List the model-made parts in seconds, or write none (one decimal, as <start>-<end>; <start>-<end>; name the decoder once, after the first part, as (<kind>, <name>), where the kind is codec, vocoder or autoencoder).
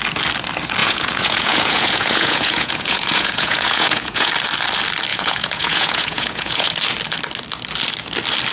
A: 0.8-4.3 (vocoder, Vocos); 5.1-6.7